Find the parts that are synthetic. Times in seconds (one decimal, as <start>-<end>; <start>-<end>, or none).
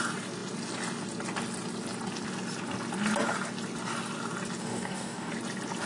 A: 4.6-5.3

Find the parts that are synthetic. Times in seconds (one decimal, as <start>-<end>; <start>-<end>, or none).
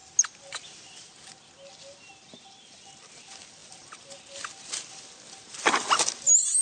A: none